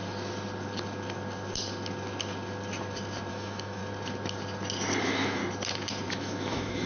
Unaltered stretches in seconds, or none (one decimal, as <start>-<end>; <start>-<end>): 0.0-3.3; 3.8-5.0; 5.4-6.1